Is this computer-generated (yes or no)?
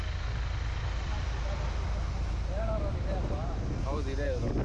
no